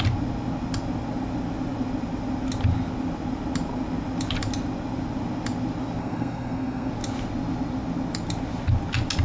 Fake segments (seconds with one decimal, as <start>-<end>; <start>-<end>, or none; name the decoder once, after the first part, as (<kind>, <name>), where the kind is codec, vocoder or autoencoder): 6.0-6.9 (codec, SNAC)